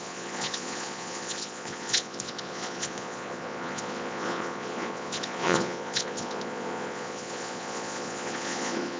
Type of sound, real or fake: fake